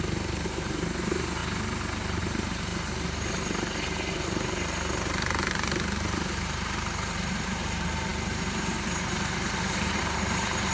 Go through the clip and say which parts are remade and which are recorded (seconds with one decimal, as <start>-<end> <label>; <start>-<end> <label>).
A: 0.0-1.4 remade; 1.4-2.2 recorded; 2.2-2.7 remade; 2.7-4.1 recorded; 4.1-10.7 remade